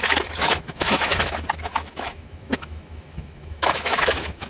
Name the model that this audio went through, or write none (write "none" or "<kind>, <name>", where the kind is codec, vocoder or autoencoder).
autoencoder, DAC-VAE